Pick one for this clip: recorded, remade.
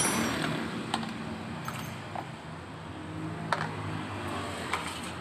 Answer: recorded